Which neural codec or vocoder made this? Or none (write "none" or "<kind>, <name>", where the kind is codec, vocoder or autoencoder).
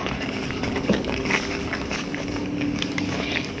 codec, DAC